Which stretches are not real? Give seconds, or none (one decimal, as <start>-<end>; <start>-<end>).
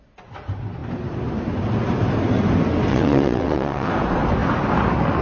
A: 2.9-3.9